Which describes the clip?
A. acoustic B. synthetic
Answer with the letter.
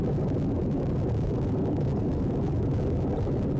A